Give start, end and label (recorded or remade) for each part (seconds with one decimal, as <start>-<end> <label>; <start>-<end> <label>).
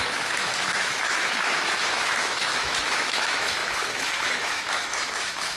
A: 0.0-5.6 remade